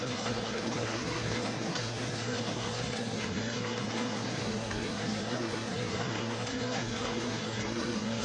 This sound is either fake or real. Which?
fake